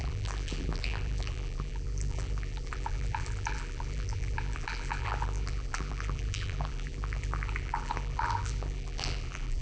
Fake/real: fake